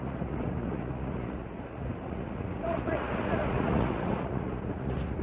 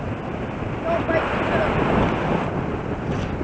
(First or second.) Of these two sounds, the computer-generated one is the first